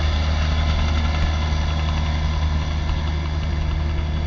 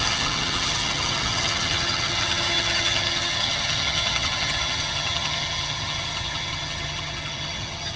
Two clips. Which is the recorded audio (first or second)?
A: first